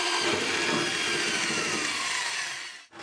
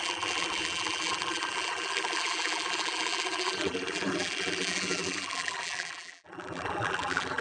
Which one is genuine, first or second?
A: first